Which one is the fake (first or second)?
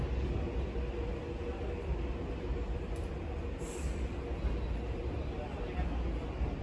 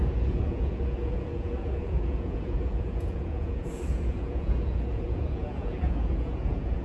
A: second